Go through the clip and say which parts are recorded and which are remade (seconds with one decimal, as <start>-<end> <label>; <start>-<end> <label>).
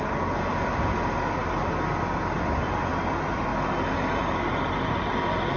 0.0-5.6 recorded